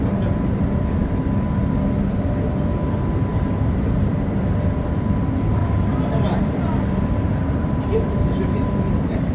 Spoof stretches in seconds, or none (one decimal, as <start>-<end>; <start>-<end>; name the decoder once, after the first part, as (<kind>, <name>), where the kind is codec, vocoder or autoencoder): 3.3-4.1 (vocoder, BigVGAN v2); 5.6-9.3